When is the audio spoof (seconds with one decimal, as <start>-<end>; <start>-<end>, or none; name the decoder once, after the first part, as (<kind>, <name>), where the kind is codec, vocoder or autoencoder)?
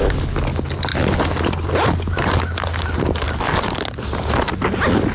none